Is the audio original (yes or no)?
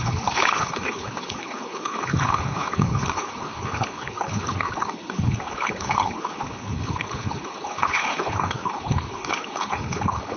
no